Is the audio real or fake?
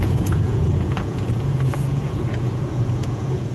fake